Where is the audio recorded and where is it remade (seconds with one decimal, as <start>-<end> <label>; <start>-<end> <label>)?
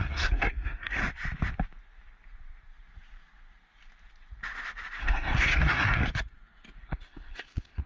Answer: 0.0-1.0 remade; 1.0-5.0 recorded; 5.0-6.0 remade; 6.0-6.8 recorded; 6.8-7.9 remade